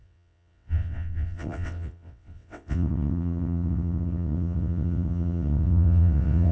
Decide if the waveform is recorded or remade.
remade